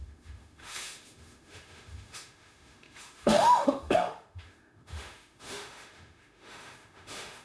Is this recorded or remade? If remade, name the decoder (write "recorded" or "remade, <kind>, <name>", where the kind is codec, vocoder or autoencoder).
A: remade, autoencoder, DAC-VAE